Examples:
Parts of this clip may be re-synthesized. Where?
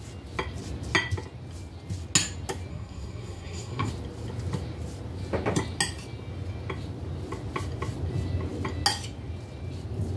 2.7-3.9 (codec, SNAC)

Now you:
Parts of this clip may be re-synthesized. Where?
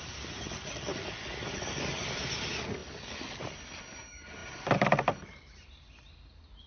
none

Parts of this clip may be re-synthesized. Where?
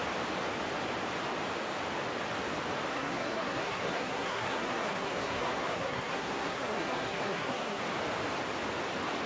2.9-7.8 (codec, SNAC)